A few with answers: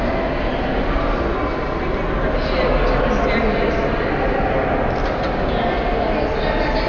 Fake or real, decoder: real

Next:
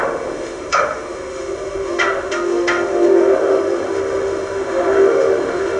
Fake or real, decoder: fake, autoencoder, DAC-VAE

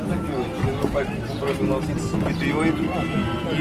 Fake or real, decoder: real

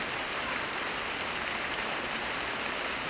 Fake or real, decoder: real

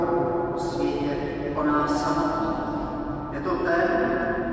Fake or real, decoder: real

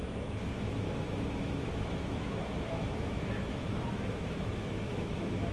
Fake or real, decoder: fake, autoencoder, DAC-VAE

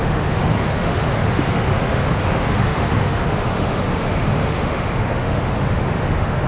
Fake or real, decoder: fake, autoencoder, DAC-VAE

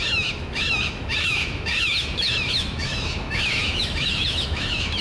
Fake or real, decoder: fake, autoencoder, DAC-VAE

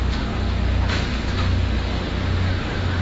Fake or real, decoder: fake, autoencoder, DAC-VAE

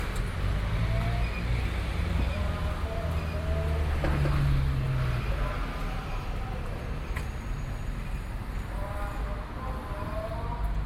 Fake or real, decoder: real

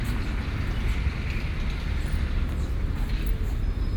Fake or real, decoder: real